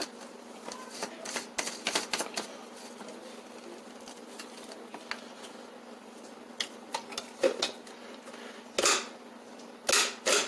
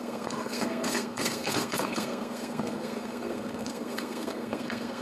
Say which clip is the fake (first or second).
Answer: second